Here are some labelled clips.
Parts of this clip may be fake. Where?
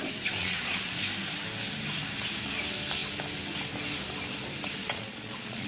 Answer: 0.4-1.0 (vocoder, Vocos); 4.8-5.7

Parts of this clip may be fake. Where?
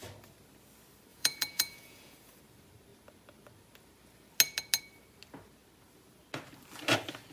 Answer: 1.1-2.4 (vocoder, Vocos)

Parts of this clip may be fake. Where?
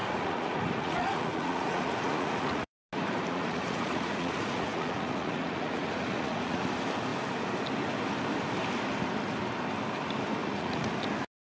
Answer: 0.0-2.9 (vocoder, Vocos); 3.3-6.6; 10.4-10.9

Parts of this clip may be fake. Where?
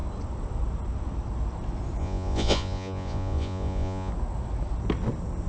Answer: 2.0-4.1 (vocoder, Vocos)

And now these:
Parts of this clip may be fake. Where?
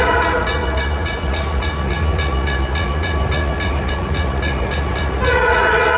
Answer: 0.0-6.0 (vocoder, Vocos)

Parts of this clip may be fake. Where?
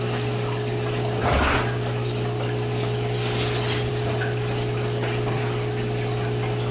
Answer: none